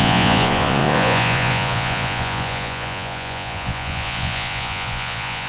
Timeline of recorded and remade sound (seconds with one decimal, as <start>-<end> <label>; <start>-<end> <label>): 0.0-5.5 remade